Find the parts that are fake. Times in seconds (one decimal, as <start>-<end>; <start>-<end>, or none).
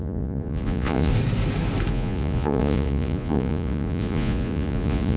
0.0-1.1; 1.9-5.2